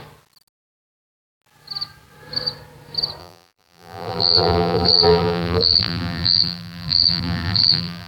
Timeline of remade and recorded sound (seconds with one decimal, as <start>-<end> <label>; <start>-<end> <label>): 0.0-3.2 recorded; 3.2-8.1 remade